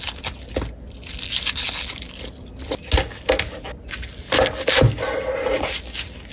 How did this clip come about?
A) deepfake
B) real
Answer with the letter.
B